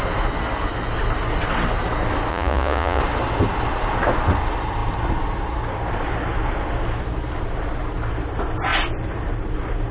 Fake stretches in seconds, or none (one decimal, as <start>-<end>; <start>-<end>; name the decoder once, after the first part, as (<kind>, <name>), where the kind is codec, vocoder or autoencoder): 2.3-3.0 (vocoder, Vocos)